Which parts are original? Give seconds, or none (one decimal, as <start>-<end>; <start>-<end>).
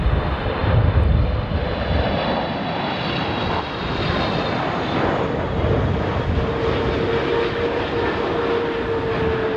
0.0-0.6; 5.1-9.6